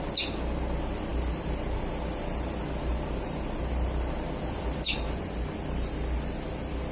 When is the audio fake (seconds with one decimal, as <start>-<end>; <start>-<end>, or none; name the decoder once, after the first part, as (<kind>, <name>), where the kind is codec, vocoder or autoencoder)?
none